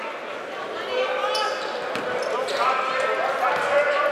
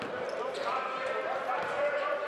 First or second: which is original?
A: first